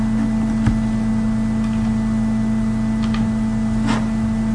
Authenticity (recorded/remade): recorded